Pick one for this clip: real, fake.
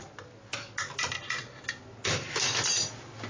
real